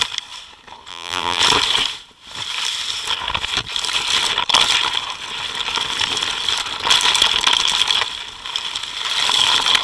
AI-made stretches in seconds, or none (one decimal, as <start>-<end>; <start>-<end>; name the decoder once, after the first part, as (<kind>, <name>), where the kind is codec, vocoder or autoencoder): 0.9-1.4 (vocoder, BigVGAN v2)